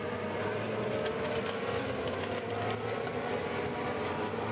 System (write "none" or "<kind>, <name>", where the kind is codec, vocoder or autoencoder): none